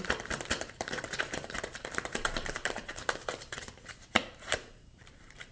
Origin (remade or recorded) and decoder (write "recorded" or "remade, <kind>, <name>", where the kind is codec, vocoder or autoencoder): remade, vocoder, BigVGAN v2